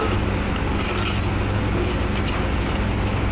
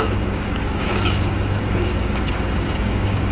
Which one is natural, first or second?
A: first